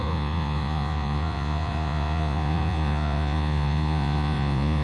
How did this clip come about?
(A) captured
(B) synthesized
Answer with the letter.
B